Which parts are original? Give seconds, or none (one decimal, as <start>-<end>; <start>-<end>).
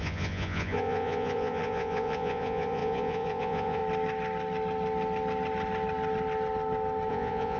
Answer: 3.8-7.1